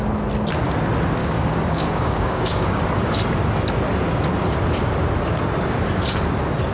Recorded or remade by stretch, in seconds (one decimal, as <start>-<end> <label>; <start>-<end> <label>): 0.0-1.2 recorded; 1.2-2.8 remade; 2.8-6.7 recorded